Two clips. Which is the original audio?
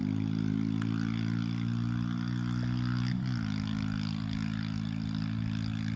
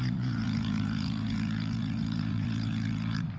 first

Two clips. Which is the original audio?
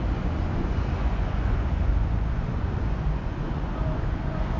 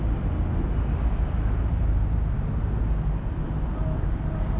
second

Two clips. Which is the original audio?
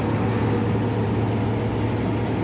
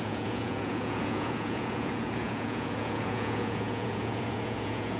first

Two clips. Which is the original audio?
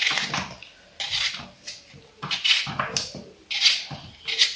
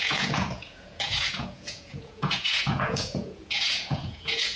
first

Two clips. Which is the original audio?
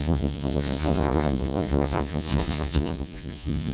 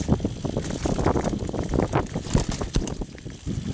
second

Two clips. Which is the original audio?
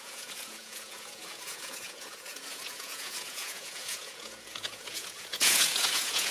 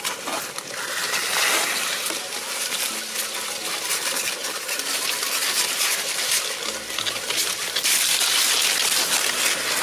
second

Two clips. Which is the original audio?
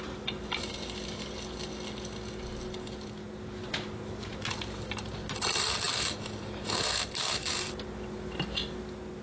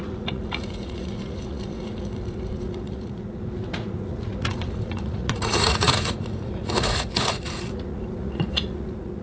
first